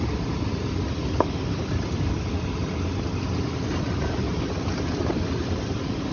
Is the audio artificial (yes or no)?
no